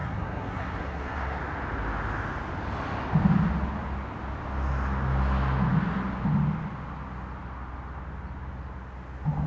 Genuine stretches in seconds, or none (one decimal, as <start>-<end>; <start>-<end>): 1.4-9.5